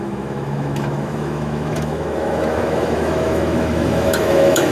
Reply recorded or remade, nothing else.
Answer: remade